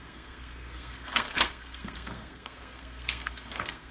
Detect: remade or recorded remade